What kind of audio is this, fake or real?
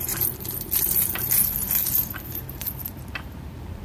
fake